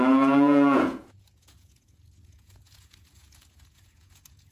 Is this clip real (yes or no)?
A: no